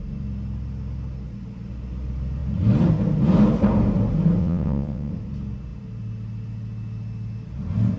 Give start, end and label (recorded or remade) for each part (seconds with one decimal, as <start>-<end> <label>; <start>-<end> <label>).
0.0-4.4 recorded; 4.4-5.1 remade; 5.1-8.0 recorded

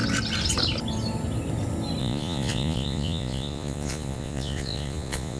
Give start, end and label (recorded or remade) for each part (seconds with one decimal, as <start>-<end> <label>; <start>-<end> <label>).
0.0-2.0 recorded; 2.0-5.4 remade

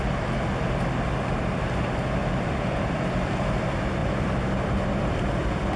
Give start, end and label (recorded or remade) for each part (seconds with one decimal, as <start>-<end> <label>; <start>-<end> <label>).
0.0-2.2 recorded; 2.2-3.1 remade; 3.1-4.0 recorded; 4.0-5.8 remade

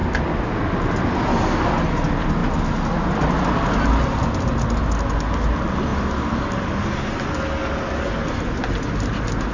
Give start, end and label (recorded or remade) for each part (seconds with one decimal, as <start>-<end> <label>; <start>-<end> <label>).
0.0-9.5 recorded

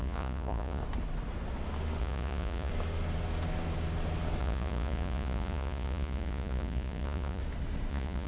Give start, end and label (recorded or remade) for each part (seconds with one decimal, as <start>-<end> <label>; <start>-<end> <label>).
0.0-0.8 remade; 0.8-2.0 recorded; 2.0-2.7 remade; 2.7-4.4 recorded; 4.4-7.4 remade; 7.4-7.9 recorded; 7.9-8.3 remade

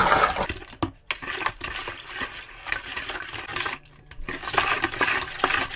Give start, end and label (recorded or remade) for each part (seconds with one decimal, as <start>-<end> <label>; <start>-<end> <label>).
0.0-5.8 recorded